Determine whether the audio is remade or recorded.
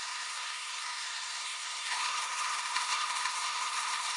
remade